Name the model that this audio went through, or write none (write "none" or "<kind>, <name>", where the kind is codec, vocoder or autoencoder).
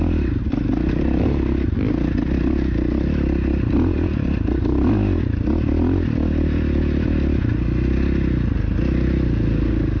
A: none